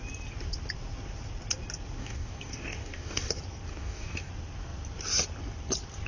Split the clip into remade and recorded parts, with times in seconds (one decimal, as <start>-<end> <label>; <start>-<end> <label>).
0.0-2.0 recorded; 2.0-3.3 remade; 3.3-3.7 recorded; 3.7-4.3 remade; 4.3-6.1 recorded